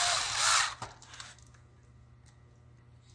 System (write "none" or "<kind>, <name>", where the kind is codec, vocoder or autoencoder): none